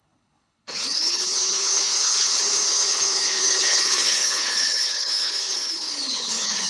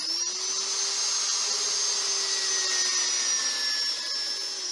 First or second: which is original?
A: second